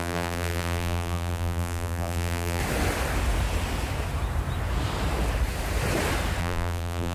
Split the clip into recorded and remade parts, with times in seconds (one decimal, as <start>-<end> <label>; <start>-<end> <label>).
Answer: 0.0-2.6 remade; 2.6-6.4 recorded; 6.4-7.1 remade